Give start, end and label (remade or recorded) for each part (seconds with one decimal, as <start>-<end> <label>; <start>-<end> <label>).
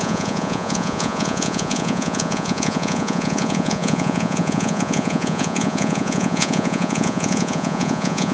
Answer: 0.0-8.3 remade